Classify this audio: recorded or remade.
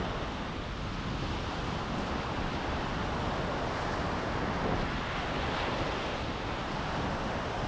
recorded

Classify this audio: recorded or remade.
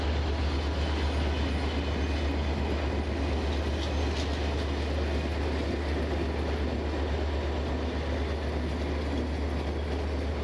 recorded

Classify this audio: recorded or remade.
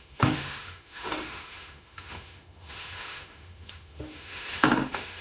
remade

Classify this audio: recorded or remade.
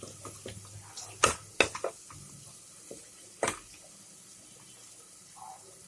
recorded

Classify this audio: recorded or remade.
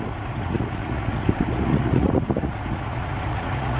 remade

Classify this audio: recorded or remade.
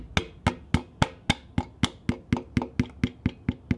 recorded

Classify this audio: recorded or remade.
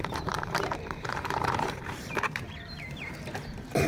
remade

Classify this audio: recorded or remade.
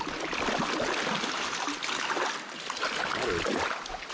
recorded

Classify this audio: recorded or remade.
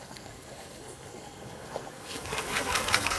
remade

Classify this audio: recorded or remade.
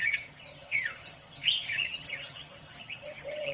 remade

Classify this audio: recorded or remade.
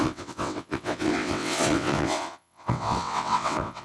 remade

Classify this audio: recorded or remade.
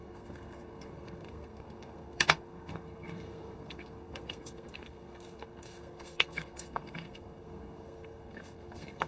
remade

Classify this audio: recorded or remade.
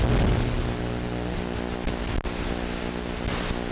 recorded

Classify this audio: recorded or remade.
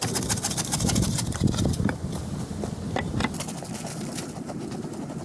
recorded